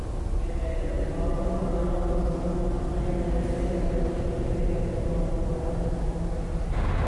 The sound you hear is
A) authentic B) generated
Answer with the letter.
A